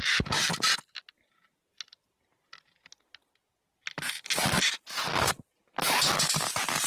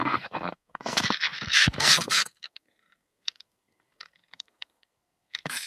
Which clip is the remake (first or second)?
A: second